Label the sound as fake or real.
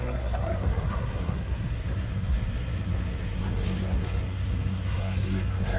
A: fake